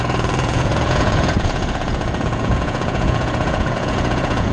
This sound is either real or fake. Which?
fake